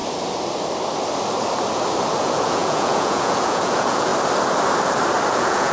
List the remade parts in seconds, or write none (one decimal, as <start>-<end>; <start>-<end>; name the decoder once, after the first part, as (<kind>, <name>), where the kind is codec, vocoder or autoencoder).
2.1-4.1 (vocoder, Vocos); 5.3-5.7